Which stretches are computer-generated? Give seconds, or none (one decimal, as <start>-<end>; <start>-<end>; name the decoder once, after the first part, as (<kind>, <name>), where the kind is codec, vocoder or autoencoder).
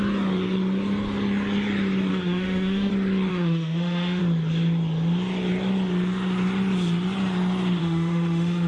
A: 2.1-2.9 (autoencoder, DAC-VAE); 3.3-4.2; 7.8-8.7